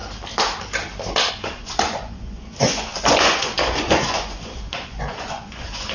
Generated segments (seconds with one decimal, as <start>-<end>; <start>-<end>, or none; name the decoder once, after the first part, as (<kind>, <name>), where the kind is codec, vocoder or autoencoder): 1.3-5.9 (vocoder, Vocos)